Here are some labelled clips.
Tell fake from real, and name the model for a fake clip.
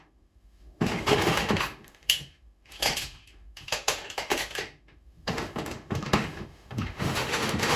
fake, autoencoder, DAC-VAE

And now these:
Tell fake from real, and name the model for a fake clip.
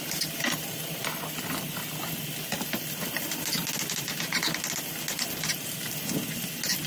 real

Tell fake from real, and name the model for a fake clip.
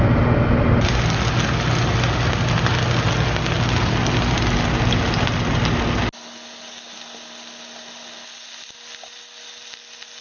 real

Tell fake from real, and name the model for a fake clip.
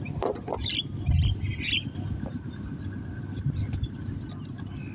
real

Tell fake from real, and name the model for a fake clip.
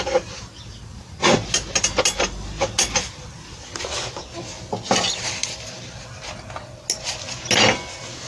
real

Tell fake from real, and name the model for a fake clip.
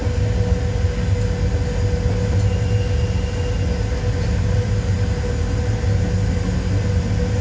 real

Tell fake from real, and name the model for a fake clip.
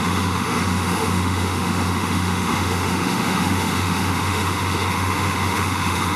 fake, autoencoder, DAC-VAE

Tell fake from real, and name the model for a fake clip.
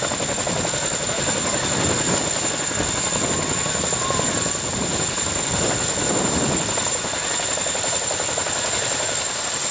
real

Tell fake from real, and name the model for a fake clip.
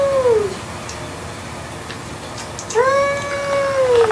real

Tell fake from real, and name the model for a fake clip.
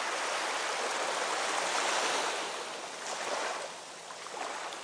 real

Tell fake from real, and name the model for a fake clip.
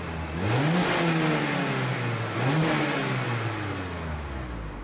real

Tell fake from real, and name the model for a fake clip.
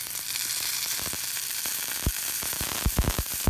real